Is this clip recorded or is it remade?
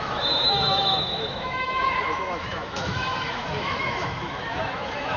remade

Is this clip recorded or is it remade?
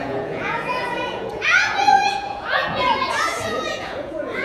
remade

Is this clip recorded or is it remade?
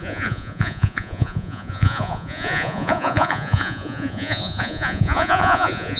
remade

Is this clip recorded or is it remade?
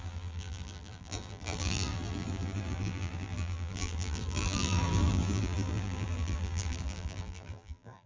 remade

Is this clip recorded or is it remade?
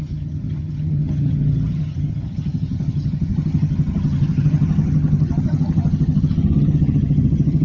remade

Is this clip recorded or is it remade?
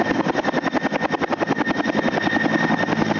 recorded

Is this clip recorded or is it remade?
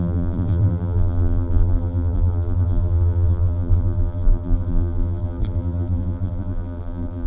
remade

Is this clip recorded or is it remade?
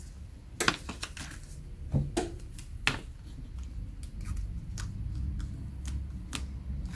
recorded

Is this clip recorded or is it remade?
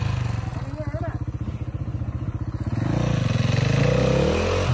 recorded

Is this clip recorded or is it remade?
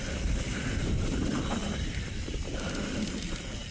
remade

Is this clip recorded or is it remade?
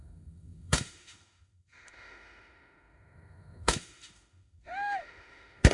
remade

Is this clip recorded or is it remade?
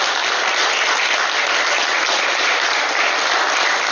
recorded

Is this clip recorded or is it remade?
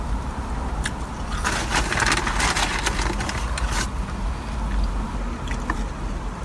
recorded